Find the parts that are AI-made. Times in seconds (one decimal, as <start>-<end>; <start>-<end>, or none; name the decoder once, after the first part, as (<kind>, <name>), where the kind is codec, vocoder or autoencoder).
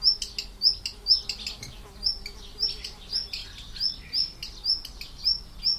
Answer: none